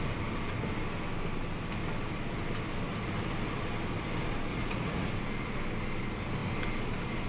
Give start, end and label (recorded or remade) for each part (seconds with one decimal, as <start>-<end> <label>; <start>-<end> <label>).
0.0-4.5 recorded; 4.5-5.1 remade; 5.1-7.3 recorded